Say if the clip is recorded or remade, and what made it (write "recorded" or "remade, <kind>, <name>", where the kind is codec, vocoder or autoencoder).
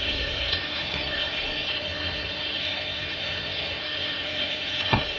remade, codec, SNAC